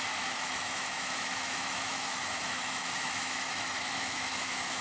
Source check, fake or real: fake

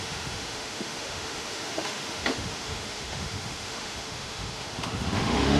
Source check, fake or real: fake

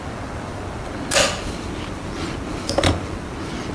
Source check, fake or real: real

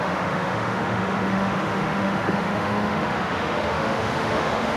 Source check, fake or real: fake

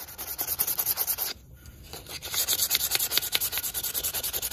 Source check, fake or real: real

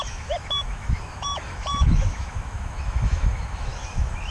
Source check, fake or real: fake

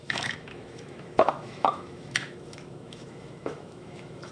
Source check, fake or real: fake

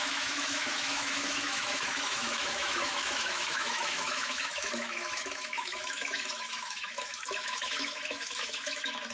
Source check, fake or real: fake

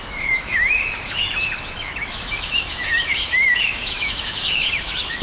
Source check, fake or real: fake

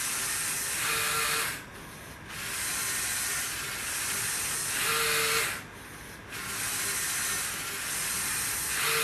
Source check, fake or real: real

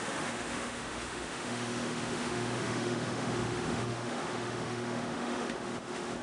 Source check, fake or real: fake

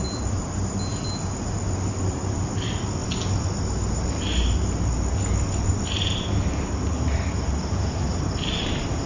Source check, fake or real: real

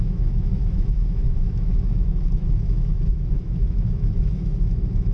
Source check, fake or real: fake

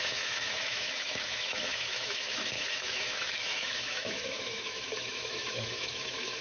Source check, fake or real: fake